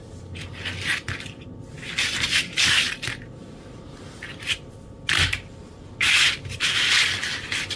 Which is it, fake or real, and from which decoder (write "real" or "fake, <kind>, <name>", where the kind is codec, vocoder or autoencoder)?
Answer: real